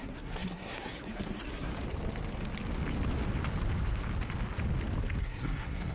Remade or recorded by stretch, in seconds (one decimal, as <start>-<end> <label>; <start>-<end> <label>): 0.0-1.7 remade; 1.7-5.2 recorded; 5.2-5.9 remade